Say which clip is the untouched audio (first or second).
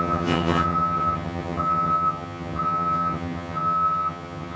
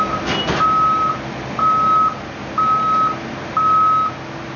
second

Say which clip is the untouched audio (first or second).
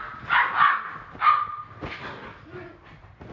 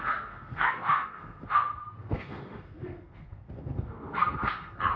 first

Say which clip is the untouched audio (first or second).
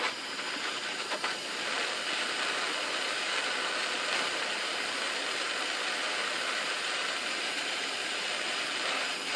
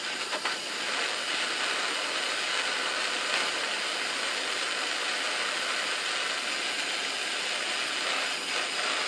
second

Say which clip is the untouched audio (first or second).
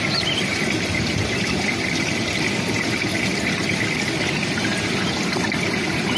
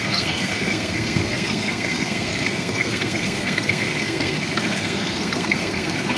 first